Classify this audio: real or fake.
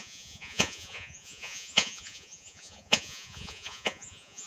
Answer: fake